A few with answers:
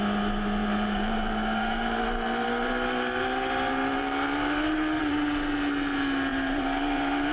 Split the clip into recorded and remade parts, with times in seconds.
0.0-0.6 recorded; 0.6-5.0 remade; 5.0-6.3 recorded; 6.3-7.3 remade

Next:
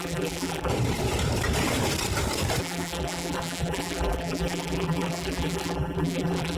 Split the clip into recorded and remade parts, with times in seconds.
0.0-0.7 remade; 0.7-2.6 recorded; 2.6-6.6 remade

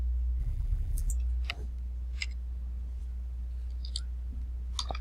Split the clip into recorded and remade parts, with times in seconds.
0.0-0.4 recorded; 0.4-1.1 remade; 1.1-5.0 recorded

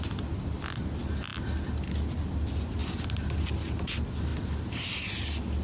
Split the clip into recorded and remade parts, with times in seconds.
0.0-5.6 recorded

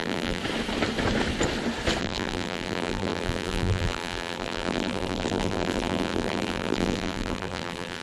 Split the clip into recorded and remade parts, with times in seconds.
0.0-0.4 remade; 0.4-2.0 recorded; 2.0-8.0 remade

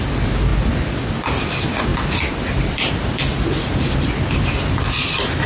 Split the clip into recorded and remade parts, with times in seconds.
0.0-1.9 recorded; 1.9-5.5 remade

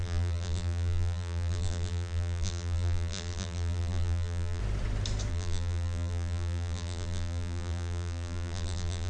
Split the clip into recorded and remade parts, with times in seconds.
0.0-4.6 remade; 4.6-5.3 recorded; 5.3-9.1 remade